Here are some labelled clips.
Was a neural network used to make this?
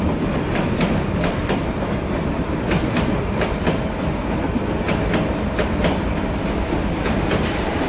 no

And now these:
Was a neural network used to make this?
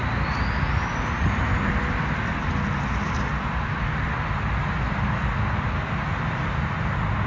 no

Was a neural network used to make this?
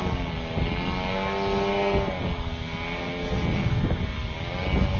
no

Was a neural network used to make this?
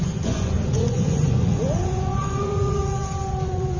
yes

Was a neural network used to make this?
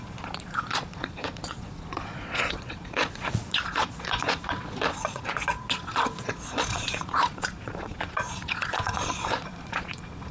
yes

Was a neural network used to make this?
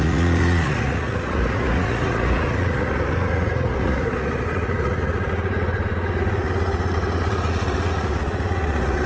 yes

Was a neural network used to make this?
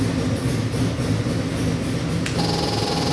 no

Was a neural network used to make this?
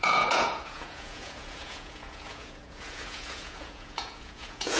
yes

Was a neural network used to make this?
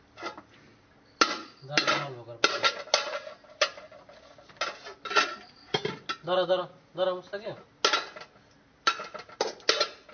no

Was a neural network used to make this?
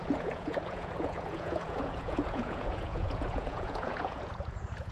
yes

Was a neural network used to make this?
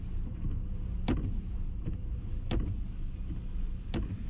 no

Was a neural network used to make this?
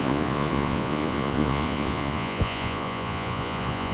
yes